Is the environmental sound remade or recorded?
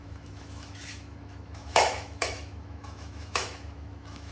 remade